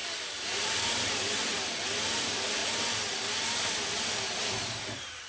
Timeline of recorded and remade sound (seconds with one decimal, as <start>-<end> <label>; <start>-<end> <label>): 0.0-1.5 remade; 1.5-2.1 recorded; 2.1-2.6 remade; 2.6-4.4 recorded; 4.4-5.3 remade